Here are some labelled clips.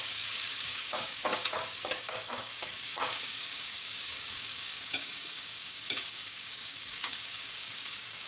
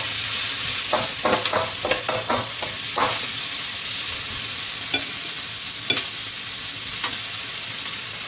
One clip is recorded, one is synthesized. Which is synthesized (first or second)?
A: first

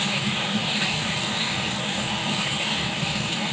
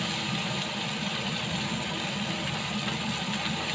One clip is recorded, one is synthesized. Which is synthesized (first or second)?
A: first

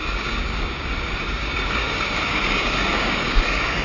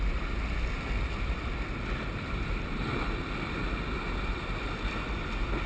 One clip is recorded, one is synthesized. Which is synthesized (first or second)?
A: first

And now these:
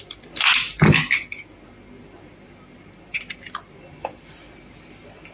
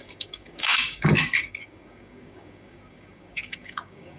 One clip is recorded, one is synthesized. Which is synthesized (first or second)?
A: second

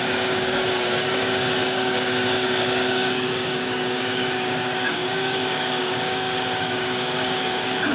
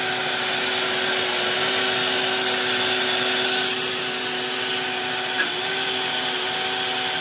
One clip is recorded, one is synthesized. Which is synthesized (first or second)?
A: first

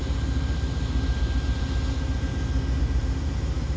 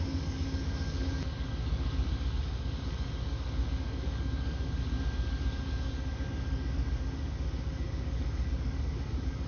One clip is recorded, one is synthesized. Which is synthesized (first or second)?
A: second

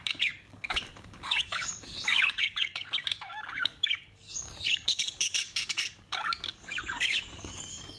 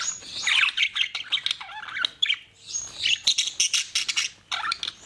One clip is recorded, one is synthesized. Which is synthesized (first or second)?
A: first